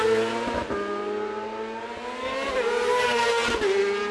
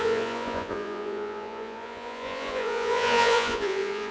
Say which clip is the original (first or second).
first